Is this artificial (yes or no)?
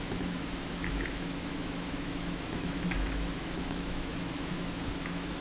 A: yes